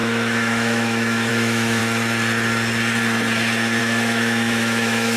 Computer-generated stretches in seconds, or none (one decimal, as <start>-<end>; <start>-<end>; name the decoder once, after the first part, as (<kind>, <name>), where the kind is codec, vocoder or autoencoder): 0.0-1.8 (autoencoder, DAC-VAE); 3.8-5.2